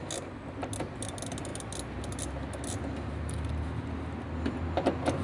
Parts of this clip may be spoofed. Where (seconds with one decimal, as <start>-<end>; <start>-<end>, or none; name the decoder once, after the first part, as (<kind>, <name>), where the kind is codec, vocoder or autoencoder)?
none